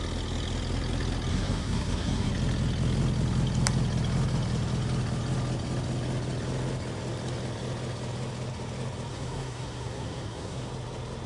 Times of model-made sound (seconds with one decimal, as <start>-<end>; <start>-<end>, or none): 1.3-2.3; 9.1-10.7